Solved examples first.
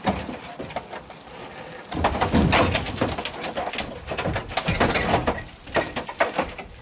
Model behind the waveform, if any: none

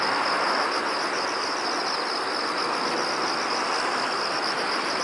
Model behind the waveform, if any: none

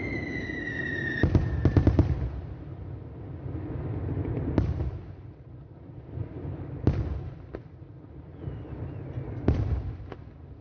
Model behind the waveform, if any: none